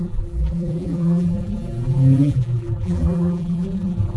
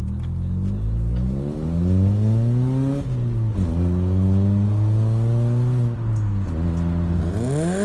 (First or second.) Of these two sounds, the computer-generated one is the first